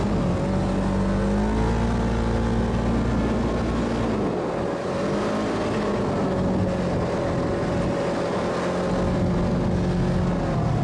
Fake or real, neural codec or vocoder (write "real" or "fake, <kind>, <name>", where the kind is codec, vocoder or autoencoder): real